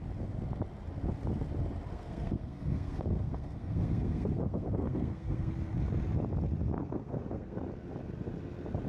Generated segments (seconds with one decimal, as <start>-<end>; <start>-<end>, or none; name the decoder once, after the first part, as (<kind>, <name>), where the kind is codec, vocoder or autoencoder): 1.9-5.5 (codec, SNAC); 6.8-7.6